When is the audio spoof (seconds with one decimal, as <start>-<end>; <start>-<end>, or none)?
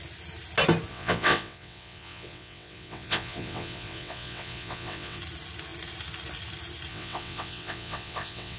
0.9-5.2; 6.9-8.6